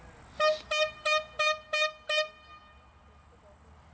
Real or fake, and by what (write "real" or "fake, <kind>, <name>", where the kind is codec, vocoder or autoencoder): real